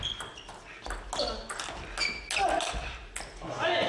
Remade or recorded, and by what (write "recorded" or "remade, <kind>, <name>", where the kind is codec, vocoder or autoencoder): recorded